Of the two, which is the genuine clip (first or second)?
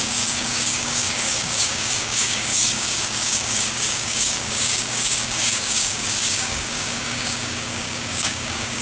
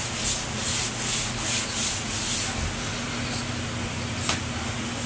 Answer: second